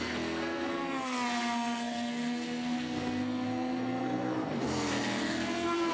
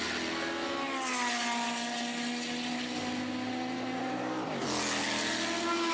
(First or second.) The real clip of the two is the second